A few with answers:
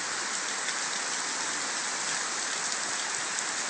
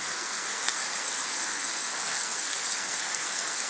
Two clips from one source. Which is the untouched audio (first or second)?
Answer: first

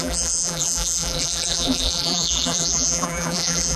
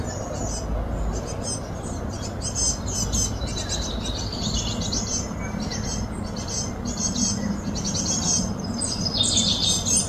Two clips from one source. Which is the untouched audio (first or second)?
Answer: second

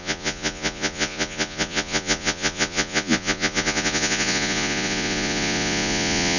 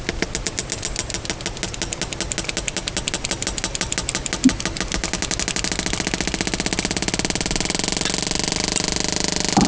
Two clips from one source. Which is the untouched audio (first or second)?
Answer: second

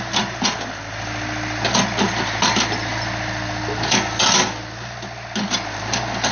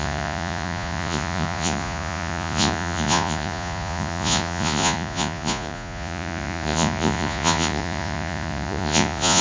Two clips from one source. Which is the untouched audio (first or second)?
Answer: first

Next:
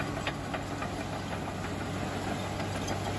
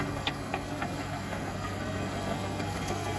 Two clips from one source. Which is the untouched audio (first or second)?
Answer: first